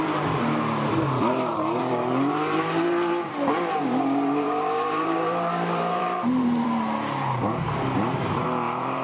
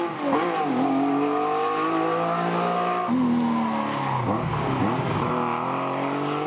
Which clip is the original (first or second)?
second